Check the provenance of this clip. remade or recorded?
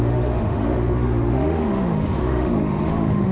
remade